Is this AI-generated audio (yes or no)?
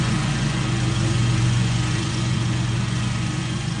yes